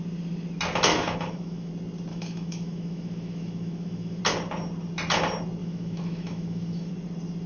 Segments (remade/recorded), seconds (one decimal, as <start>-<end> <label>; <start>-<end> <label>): 0.0-0.9 recorded; 0.9-1.7 remade; 1.7-2.1 recorded; 2.1-4.2 remade; 4.2-5.6 recorded; 5.6-6.9 remade; 6.9-7.5 recorded